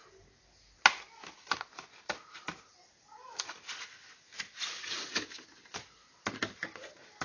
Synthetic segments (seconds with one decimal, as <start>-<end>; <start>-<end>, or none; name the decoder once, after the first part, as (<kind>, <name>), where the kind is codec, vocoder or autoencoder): none